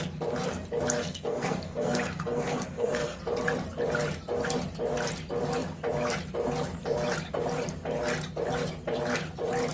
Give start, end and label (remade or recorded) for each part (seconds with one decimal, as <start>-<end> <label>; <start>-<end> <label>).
0.0-1.0 recorded; 1.0-3.2 remade; 3.2-9.7 recorded